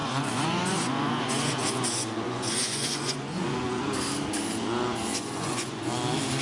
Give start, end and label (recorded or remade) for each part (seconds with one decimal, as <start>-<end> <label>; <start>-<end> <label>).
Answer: 0.0-3.8 remade; 3.8-5.1 recorded; 5.1-5.9 remade; 5.9-6.4 recorded